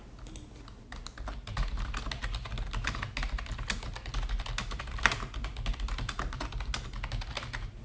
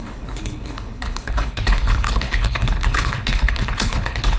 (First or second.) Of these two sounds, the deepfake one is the second